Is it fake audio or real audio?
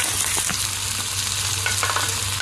real